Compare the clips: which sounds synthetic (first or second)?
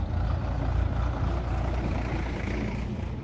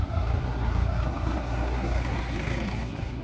second